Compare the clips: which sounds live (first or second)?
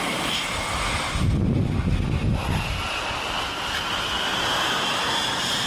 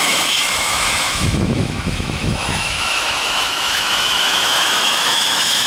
first